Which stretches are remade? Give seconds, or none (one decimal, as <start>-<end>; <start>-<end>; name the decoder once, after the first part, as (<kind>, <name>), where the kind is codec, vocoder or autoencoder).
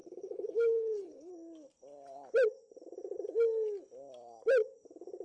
0.0-1.3 (codec, HILCodec)